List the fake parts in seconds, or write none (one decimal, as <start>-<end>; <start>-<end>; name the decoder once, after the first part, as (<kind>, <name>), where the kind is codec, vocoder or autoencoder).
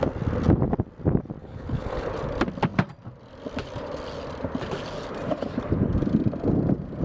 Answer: 1.4-2.1 (codec, HILCodec)